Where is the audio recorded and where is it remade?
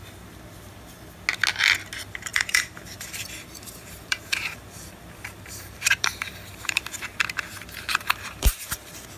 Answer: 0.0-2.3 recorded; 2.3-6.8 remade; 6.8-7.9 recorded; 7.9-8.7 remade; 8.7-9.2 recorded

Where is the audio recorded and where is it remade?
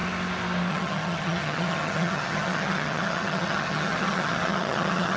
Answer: 0.0-0.7 recorded; 0.7-5.2 remade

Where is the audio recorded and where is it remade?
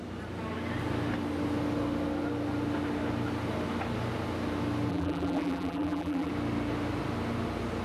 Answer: 0.0-4.9 recorded; 4.9-6.3 remade; 6.3-7.8 recorded